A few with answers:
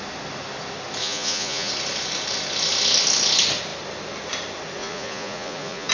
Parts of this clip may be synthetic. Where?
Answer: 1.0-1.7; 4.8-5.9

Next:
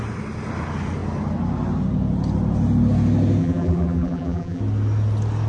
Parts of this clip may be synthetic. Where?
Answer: 3.4-4.6

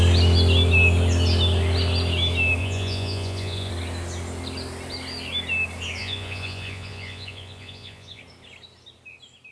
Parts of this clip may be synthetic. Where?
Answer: 2.6-3.7; 6.0-8.2

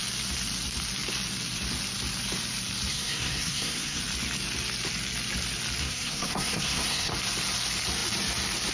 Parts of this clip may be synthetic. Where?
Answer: 2.9-4.0; 5.8-7.1